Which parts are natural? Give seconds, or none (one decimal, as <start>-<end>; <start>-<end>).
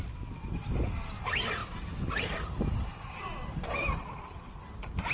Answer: 0.0-5.1